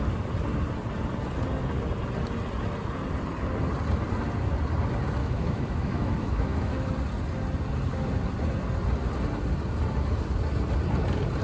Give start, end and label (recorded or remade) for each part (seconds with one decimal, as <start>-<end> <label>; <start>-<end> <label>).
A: 0.0-5.2 recorded; 5.2-6.9 remade; 6.9-11.4 recorded